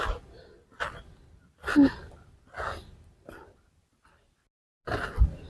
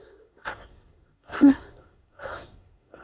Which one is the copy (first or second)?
second